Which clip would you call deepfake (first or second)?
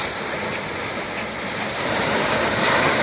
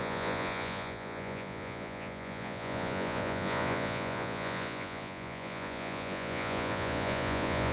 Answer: second